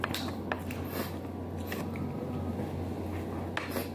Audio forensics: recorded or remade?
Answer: recorded